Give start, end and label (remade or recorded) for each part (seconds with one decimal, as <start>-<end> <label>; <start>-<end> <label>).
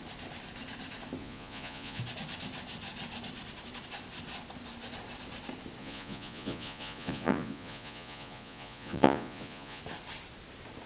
0.0-1.2 recorded; 1.2-2.0 remade; 2.0-5.8 recorded; 5.8-9.8 remade; 9.8-10.9 recorded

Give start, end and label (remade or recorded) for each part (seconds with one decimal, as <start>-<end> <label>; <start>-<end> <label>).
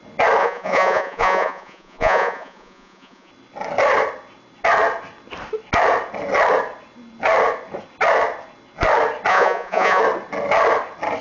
0.0-0.4 recorded; 0.4-3.3 remade; 3.3-9.3 recorded; 9.3-10.0 remade; 10.0-11.2 recorded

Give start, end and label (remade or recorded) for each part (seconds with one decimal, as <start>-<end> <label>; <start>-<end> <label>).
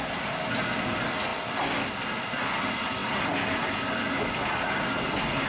0.0-5.5 recorded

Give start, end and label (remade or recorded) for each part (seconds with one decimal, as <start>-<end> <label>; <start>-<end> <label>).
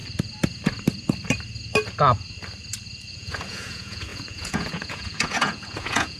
0.0-3.1 recorded; 3.1-6.2 remade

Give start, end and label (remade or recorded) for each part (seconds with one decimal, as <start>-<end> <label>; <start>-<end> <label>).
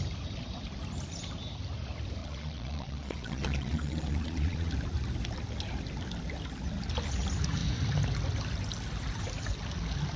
0.0-2.2 recorded; 2.2-4.7 remade; 4.7-10.2 recorded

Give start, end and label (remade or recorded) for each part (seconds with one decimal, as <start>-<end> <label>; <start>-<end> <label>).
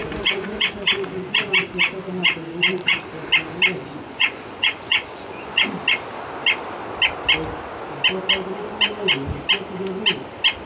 0.0-3.0 remade; 3.0-3.8 recorded; 3.8-5.7 remade; 5.7-10.7 recorded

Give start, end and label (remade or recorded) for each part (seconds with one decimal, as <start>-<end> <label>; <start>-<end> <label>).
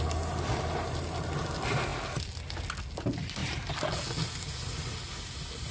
0.0-5.7 recorded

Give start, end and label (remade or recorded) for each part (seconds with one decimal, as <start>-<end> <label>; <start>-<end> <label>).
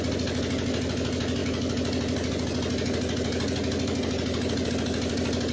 0.0-5.5 recorded